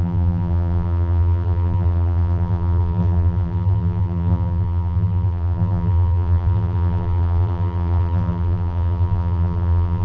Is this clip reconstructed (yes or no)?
yes